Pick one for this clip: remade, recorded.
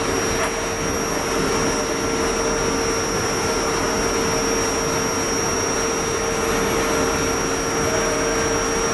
recorded